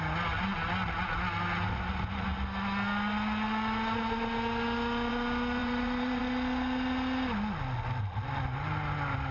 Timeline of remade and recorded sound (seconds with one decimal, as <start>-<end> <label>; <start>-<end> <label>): 0.0-5.6 recorded; 5.6-6.2 remade; 6.2-9.3 recorded